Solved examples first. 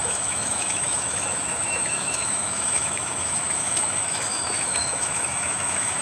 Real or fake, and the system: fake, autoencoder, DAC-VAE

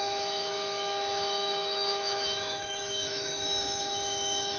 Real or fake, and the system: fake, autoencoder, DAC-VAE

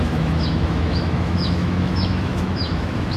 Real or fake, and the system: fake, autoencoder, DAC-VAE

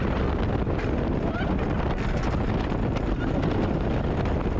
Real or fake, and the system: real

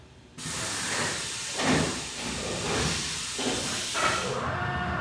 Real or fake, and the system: real